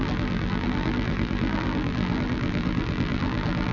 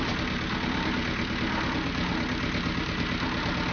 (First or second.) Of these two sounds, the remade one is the first